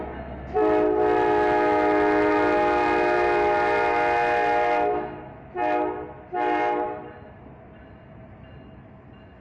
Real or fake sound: real